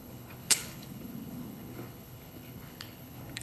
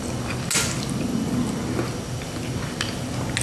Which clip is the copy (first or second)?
first